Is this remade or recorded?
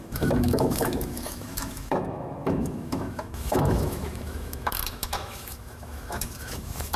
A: remade